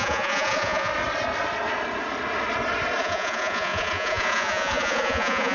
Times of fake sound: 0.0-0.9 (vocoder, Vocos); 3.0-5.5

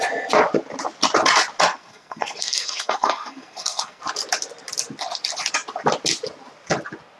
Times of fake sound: 1.7-4.0 (codec, SNAC)

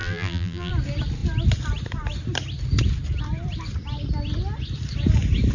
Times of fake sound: 0.0-0.7 (vocoder, BigVGAN v2)